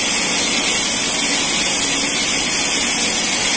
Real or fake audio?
real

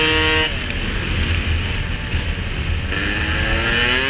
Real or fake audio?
real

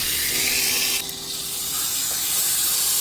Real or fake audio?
real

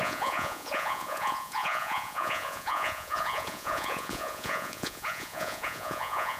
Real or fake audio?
fake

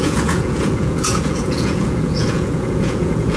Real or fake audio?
fake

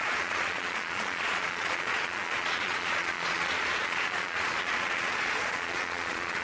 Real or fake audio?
fake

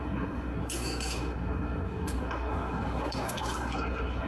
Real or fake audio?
fake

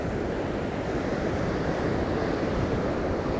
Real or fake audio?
fake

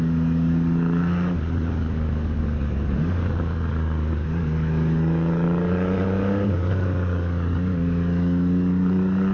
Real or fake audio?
fake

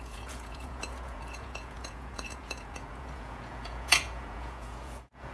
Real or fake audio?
fake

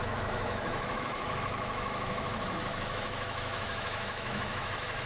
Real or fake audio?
fake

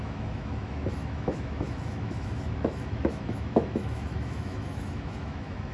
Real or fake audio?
fake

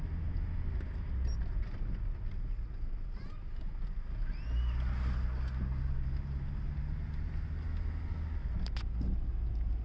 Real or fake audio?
real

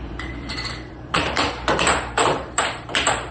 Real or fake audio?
fake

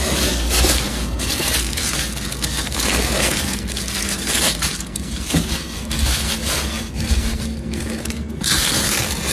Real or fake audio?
fake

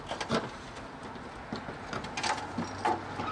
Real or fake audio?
real